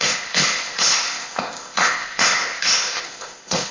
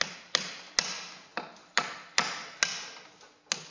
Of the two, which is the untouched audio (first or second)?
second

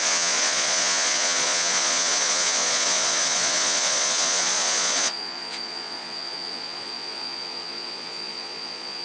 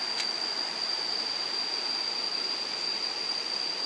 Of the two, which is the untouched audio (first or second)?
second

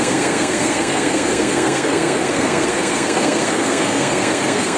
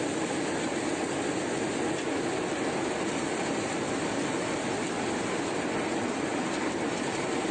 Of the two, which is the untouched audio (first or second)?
second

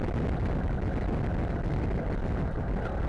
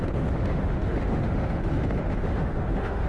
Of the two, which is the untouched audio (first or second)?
first